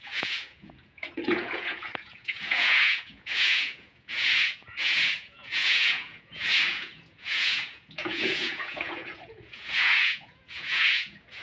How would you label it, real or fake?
fake